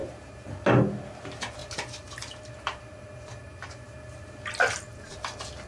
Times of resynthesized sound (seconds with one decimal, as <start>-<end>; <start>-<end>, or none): 0.0-0.6; 1.6-4.4